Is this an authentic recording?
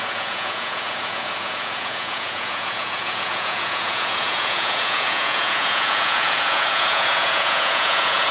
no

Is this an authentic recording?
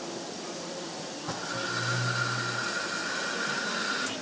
yes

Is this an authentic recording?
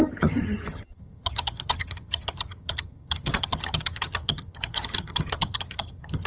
no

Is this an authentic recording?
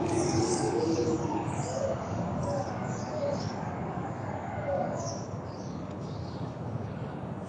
no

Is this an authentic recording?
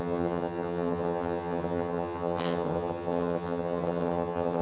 no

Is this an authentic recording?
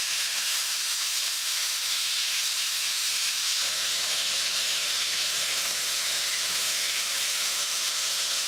no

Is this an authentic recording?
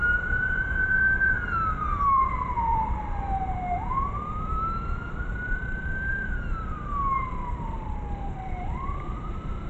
no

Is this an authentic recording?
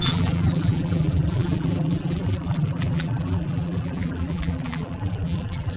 no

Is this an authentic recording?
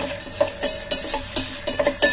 yes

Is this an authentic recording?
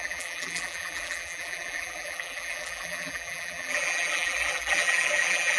no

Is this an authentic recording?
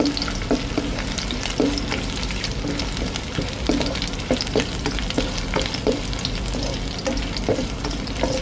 yes